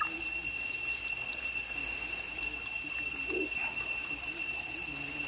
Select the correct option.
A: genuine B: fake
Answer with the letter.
A